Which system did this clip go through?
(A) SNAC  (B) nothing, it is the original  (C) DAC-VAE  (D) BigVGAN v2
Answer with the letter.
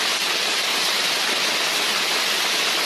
B